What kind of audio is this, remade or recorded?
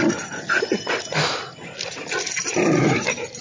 recorded